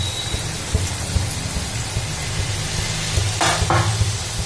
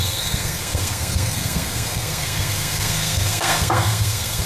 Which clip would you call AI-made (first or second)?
second